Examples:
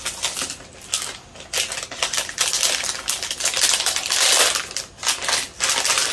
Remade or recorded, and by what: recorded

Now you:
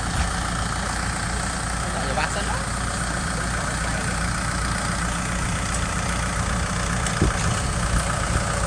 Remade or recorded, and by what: recorded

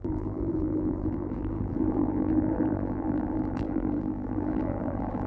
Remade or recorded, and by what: remade, vocoder, BigVGAN v2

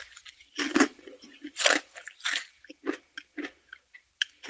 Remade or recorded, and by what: recorded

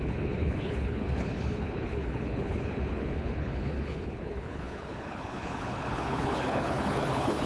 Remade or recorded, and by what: remade, codec, HILCodec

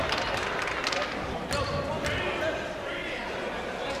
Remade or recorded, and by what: recorded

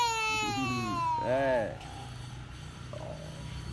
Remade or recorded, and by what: recorded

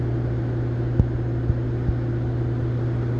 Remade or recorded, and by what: recorded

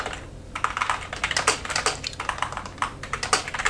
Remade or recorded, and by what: recorded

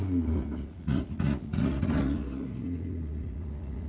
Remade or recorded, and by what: remade, vocoder, Vocos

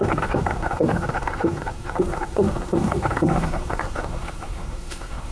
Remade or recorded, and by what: remade, codec, SNAC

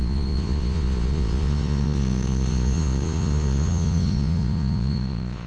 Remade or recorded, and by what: remade, vocoder, Vocos